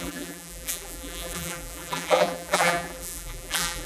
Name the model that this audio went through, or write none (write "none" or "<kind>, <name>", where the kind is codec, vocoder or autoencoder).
vocoder, BigVGAN v2